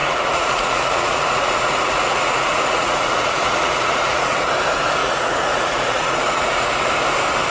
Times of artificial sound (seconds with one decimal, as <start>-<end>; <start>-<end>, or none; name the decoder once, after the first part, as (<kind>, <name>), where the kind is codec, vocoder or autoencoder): 0.0-4.5 (vocoder, Vocos); 5.0-6.9